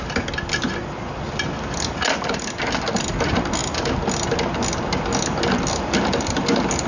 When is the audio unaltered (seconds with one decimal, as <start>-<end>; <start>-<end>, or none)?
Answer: 0.0-6.9